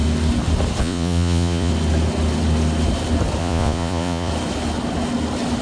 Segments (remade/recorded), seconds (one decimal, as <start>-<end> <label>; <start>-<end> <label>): 0.0-0.8 recorded; 0.8-1.7 remade; 1.7-3.4 recorded; 3.4-4.3 remade; 4.3-5.6 recorded